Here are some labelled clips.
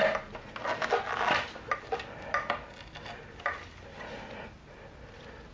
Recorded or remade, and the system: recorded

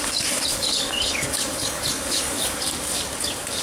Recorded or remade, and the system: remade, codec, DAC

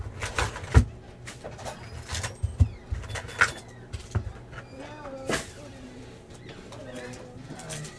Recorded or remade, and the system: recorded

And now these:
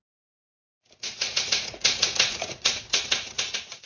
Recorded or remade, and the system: remade, vocoder, Vocos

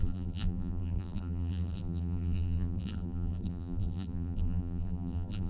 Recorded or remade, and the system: remade, vocoder, BigVGAN v2